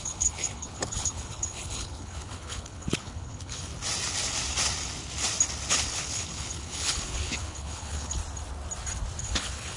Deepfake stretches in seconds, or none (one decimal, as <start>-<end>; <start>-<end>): 0.0-3.7; 5.7-8.2; 9.2-9.8

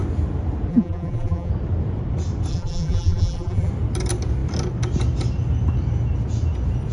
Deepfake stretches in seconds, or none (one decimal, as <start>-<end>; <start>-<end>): 0.7-1.5; 2.5-3.7